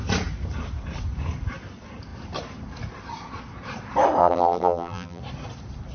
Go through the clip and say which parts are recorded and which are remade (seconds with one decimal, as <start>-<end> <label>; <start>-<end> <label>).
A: 0.0-4.2 recorded; 4.2-5.2 remade; 5.2-5.9 recorded